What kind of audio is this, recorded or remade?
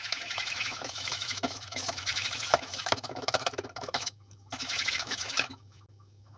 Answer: remade